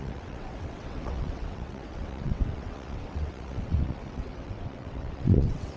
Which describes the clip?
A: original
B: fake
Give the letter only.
B